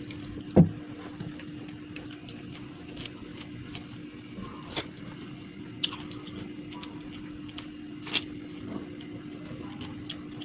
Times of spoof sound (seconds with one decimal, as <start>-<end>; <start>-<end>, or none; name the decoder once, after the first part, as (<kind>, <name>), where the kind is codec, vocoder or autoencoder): none